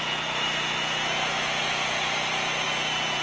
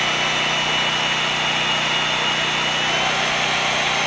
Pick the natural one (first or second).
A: second